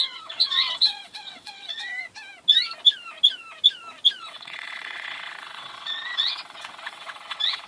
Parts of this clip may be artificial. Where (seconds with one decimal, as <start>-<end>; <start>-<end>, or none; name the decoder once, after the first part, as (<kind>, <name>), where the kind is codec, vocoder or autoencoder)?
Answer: 0.0-1.9 (vocoder, WaveNeXt); 4.2-7.7